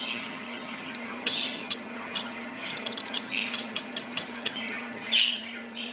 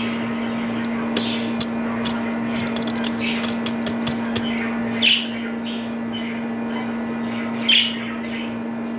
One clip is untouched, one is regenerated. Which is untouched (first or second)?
second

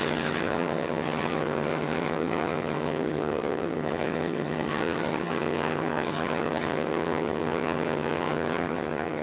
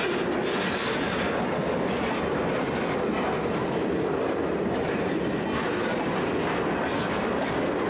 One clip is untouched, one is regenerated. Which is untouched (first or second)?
second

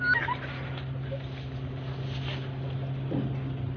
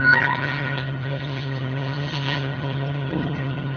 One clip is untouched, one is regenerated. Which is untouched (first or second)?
first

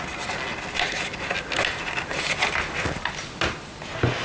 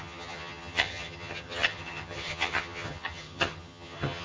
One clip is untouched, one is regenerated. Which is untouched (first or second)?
first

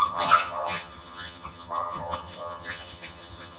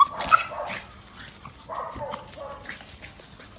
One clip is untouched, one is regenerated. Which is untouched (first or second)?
second